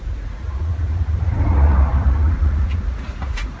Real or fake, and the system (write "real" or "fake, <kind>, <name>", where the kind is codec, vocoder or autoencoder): fake, vocoder, Vocos